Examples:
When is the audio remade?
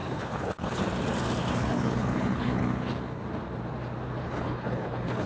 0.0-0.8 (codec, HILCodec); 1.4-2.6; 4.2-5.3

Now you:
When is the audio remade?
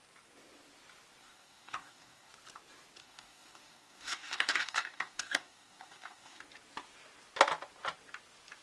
1.2-2.3 (codec, DAC); 3.0-6.4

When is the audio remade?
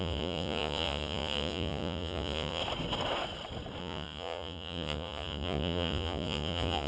0.0-2.6 (vocoder, Vocos); 3.8-6.9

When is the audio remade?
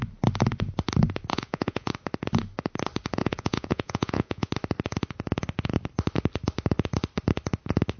1.3-1.9 (vocoder, Vocos); 3.2-4.5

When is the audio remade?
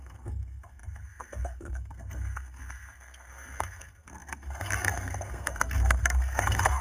0.0-6.8 (codec, SNAC)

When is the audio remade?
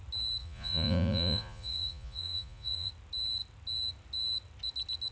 0.4-2.9 (vocoder, Vocos)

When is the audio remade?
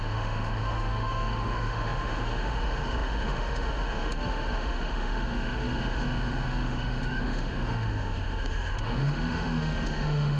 0.0-10.4 (autoencoder, DAC-VAE)